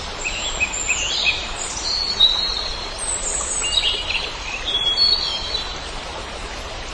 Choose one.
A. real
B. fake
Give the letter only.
B